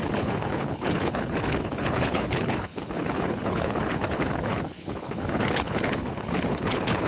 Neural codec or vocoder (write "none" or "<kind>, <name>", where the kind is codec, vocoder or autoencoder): codec, HILCodec